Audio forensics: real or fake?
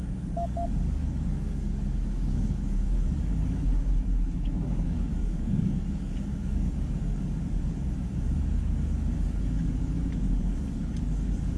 fake